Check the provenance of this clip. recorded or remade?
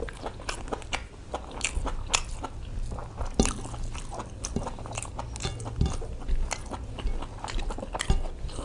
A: recorded